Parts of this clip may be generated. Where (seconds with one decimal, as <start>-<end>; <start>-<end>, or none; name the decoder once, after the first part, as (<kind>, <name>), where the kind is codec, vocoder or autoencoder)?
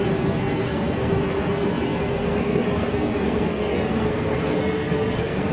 0.0-5.5 (codec, SNAC)